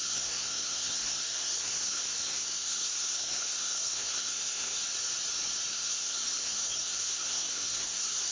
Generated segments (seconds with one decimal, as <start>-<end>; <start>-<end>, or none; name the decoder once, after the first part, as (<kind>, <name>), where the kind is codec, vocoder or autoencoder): 0.0-4.8 (codec, SNAC); 5.7-8.3